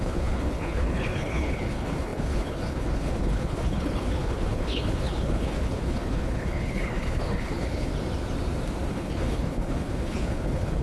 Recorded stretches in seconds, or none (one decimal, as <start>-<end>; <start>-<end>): 7.9-8.9